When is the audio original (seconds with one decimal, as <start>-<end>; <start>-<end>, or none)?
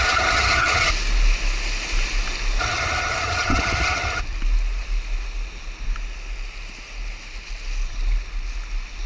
0.9-2.6; 4.2-9.1